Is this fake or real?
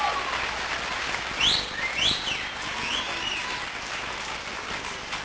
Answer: real